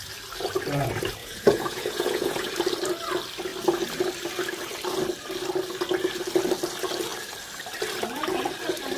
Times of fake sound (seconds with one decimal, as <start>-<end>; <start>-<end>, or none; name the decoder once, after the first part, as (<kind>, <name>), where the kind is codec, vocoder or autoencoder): 1.2-2.5 (vocoder, Vocos)